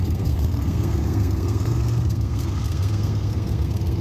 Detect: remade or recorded remade